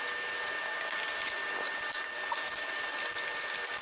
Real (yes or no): yes